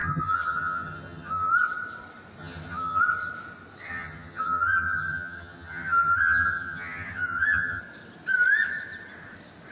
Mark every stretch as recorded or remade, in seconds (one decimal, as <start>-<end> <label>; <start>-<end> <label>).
0.0-1.5 remade; 1.5-2.4 recorded; 2.4-3.0 remade; 3.0-3.9 recorded; 3.9-7.8 remade; 7.8-9.7 recorded